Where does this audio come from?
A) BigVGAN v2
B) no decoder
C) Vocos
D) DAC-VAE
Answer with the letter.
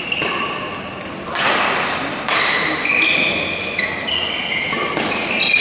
B